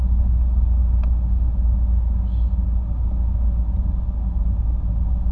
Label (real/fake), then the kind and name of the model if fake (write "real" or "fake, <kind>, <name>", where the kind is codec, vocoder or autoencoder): real